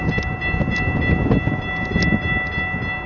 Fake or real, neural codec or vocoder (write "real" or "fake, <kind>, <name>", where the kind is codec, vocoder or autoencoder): real